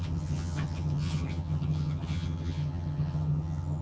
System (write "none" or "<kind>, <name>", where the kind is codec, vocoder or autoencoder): vocoder, HiFi-GAN